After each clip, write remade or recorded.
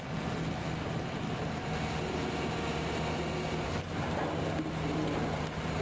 remade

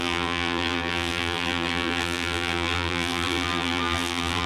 remade